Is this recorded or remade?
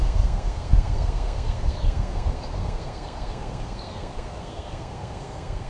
remade